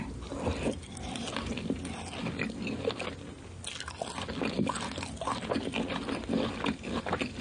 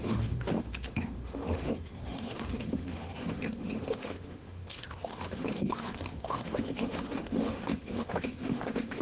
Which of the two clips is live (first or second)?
first